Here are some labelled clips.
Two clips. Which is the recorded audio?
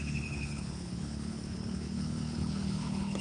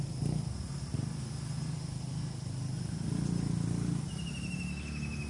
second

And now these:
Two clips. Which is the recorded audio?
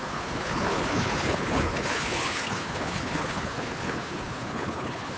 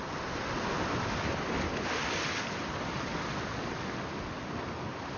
second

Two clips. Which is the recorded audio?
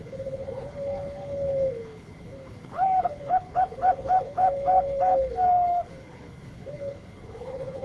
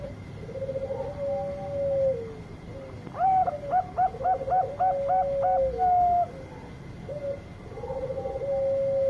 second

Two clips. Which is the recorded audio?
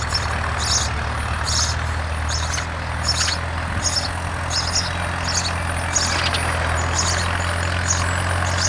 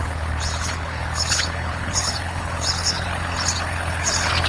first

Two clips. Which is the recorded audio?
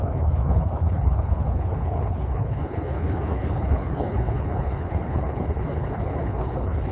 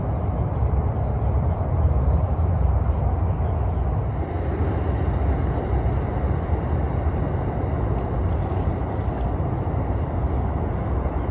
second